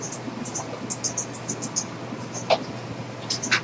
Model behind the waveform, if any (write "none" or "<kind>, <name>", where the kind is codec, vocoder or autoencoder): none